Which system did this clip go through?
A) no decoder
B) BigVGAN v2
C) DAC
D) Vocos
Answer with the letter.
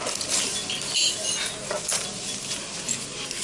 A